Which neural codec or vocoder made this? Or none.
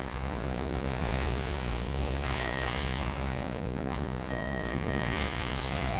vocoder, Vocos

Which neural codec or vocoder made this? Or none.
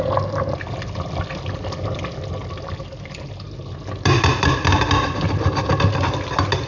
none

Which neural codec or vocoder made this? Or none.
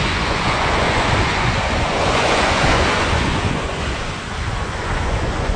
vocoder, Vocos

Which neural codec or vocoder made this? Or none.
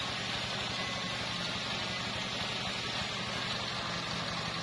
none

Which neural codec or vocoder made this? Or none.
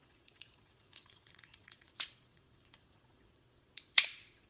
vocoder, Vocos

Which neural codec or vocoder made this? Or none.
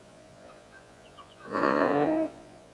vocoder, Vocos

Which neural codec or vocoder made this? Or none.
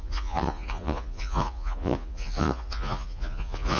vocoder, Vocos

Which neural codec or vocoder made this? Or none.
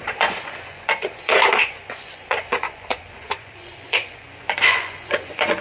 vocoder, Vocos